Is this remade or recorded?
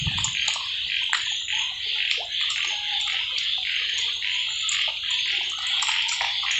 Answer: recorded